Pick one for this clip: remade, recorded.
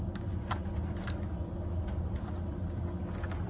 recorded